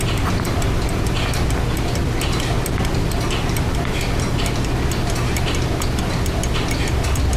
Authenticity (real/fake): real